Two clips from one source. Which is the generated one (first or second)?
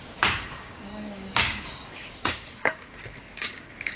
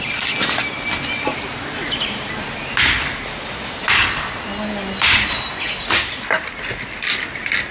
first